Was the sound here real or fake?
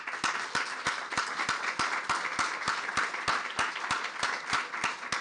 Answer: real